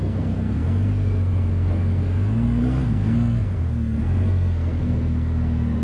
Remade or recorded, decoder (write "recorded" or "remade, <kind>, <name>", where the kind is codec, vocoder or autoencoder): remade, codec, SNAC